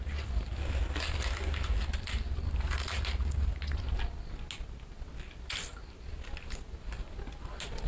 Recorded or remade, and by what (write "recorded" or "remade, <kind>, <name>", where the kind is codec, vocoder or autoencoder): recorded